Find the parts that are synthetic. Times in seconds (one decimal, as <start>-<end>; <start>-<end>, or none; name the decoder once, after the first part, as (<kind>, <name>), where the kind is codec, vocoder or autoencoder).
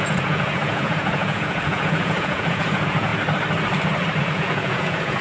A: 0.0-3.1 (vocoder, Vocos); 4.2-5.2